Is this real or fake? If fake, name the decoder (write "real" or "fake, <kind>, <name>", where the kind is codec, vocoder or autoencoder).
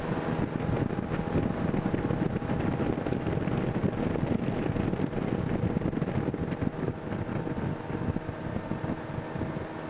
real